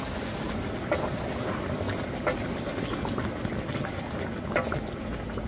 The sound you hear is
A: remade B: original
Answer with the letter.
B